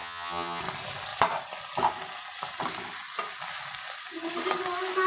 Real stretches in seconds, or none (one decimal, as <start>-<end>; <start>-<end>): 0.6-5.1